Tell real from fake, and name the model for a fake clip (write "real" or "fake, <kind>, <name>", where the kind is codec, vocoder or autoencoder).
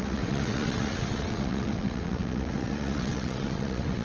fake, vocoder, WaveNeXt